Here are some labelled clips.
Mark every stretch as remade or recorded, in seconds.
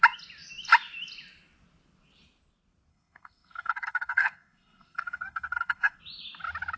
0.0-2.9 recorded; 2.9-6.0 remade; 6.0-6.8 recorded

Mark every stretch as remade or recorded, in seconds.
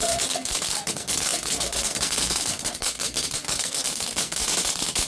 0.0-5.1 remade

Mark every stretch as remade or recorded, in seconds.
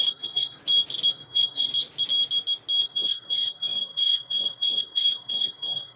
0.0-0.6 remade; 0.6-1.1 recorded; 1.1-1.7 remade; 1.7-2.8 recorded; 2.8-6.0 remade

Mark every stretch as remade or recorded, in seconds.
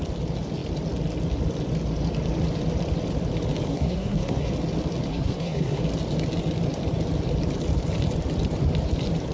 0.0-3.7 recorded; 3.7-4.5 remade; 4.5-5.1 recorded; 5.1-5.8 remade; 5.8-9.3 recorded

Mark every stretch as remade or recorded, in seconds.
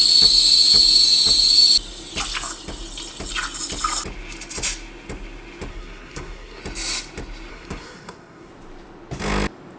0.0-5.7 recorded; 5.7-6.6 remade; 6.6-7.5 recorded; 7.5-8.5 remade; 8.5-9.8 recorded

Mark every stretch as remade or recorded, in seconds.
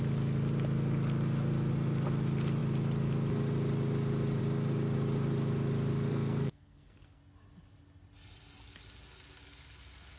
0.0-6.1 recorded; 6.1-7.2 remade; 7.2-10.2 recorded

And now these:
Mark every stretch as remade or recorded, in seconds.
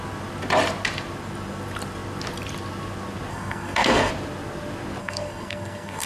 0.0-3.3 recorded; 3.3-4.1 remade; 4.1-5.0 recorded; 5.0-6.1 remade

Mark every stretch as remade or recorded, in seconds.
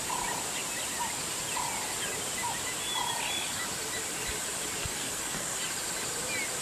0.0-4.8 recorded; 4.8-5.6 remade; 5.6-6.6 recorded